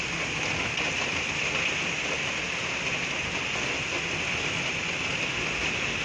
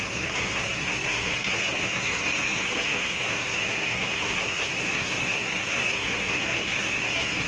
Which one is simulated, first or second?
second